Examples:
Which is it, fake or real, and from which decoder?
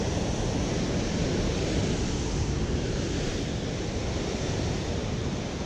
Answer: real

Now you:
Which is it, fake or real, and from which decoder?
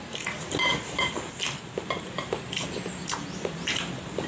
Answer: real